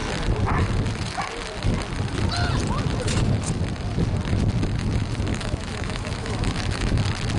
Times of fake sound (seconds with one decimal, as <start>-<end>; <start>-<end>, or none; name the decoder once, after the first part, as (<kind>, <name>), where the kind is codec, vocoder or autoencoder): 5.3-7.0 (autoencoder, DAC-VAE)